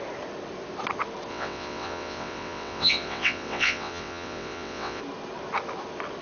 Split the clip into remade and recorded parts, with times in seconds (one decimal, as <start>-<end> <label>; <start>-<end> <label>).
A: 0.0-1.3 recorded; 1.3-5.0 remade; 5.0-6.2 recorded